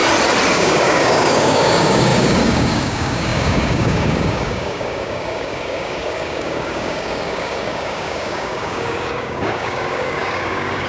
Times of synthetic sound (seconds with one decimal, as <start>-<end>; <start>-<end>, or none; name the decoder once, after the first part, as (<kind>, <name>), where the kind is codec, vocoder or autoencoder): 0.5-10.9 (codec, DAC)